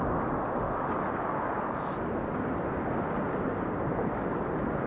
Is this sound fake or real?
real